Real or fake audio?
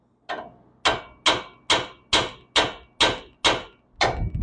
real